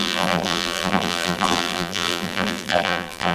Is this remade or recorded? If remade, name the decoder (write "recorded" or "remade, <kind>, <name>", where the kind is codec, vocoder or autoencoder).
remade, vocoder, BigVGAN v2